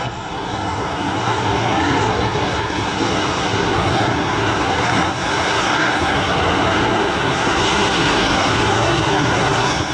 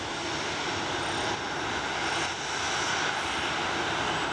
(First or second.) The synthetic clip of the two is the first